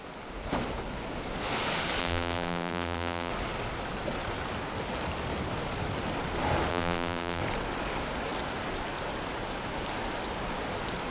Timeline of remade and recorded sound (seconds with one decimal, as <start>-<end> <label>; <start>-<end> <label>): 0.0-2.0 recorded; 2.0-3.3 remade; 3.3-6.7 recorded; 6.7-7.4 remade; 7.4-11.1 recorded